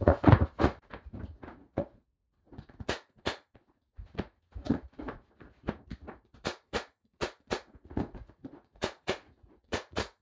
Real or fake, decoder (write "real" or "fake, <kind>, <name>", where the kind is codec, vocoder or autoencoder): fake, vocoder, Vocos